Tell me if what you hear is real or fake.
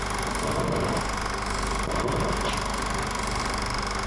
real